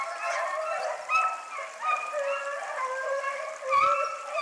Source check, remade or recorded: recorded